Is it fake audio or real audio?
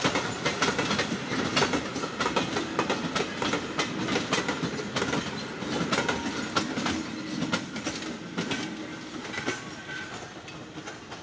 real